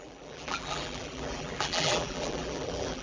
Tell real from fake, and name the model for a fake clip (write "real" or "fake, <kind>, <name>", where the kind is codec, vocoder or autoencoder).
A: fake, vocoder, BigVGAN v2